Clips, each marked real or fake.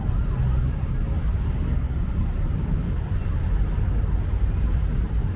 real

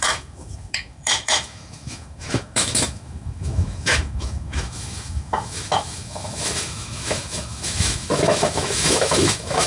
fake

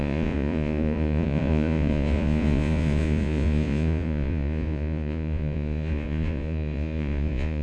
fake